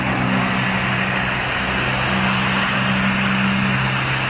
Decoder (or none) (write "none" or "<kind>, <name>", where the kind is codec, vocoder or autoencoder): none